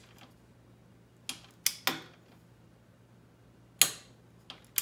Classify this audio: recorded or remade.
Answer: recorded